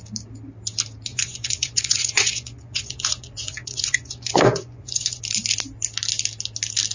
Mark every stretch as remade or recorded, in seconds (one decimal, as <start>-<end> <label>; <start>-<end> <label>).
0.0-1.1 recorded; 1.1-5.2 remade; 5.2-6.9 recorded